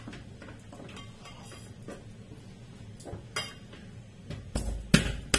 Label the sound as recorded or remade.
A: recorded